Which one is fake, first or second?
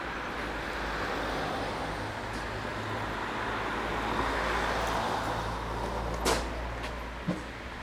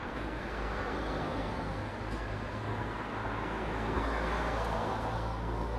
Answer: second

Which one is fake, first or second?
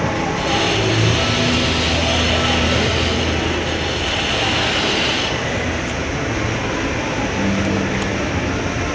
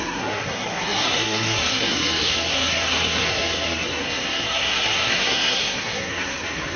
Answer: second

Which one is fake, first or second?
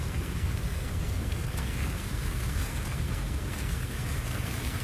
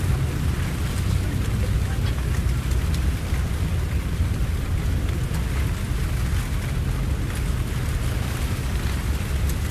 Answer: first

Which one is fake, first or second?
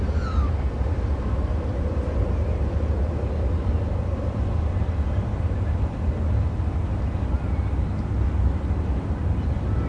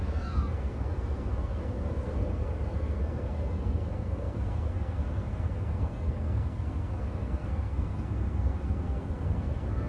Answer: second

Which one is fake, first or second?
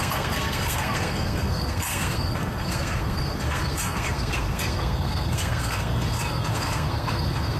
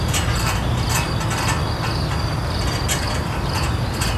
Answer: first